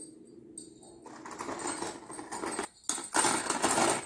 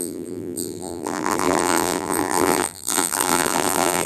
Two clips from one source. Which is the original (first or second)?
first